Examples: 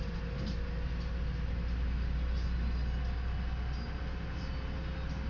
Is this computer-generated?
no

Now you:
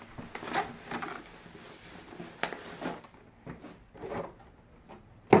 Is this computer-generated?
no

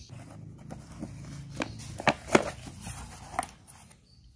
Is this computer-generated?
no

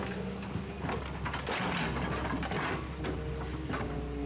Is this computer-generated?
no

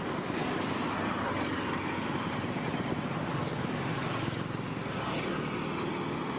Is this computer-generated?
no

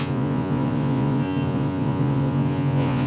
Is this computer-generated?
yes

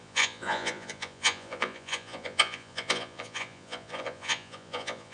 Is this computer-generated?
yes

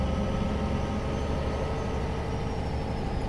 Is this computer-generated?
no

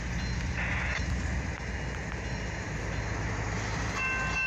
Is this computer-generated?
no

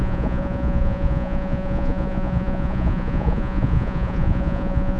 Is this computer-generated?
yes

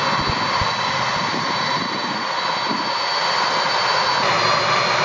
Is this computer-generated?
no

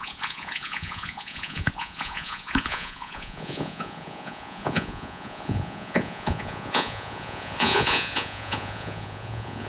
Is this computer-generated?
yes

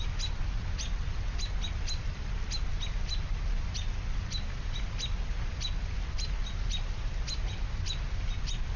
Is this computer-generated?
no